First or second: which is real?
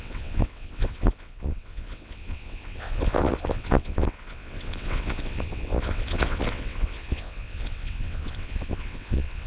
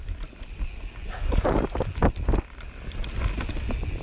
second